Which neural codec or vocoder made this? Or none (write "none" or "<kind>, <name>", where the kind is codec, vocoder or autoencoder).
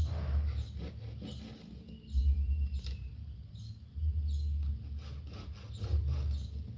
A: none